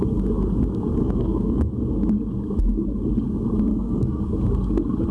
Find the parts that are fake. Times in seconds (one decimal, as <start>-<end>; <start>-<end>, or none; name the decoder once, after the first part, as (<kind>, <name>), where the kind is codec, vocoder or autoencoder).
1.0-1.7 (codec, SNAC); 3.7-4.2